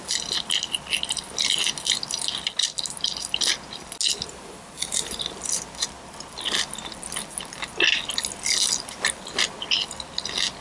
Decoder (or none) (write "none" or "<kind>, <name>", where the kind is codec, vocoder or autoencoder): none